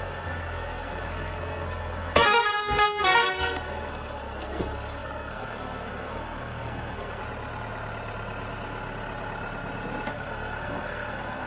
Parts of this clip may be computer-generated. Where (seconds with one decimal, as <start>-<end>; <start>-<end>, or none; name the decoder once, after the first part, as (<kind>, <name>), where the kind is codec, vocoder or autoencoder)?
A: 0.0-7.2 (codec, SNAC); 10.1-11.5